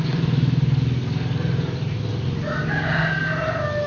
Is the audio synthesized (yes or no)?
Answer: no